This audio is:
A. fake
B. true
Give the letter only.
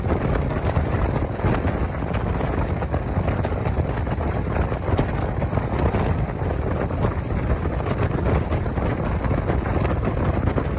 B